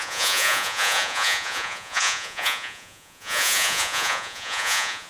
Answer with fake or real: fake